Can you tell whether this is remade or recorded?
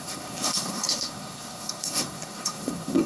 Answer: remade